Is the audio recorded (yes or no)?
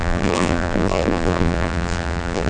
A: no